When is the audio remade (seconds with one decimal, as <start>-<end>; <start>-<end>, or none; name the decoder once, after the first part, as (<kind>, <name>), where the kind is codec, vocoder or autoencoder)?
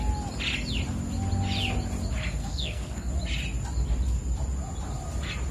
2.4-3.1 (codec, SNAC)